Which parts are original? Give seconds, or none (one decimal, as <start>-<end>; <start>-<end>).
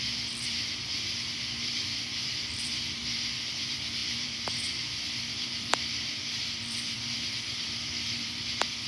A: 3.0-3.6